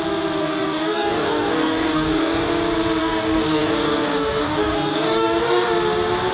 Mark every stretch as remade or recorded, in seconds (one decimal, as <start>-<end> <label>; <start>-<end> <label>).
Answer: 0.0-0.4 recorded; 0.4-2.5 remade; 2.5-3.0 recorded; 3.0-5.7 remade; 5.7-6.3 recorded